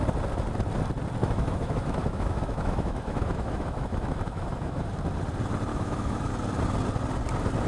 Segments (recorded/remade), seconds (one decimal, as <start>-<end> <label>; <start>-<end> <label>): 0.0-1.2 recorded; 1.2-4.9 remade; 4.9-5.7 recorded; 5.7-6.3 remade; 6.3-7.7 recorded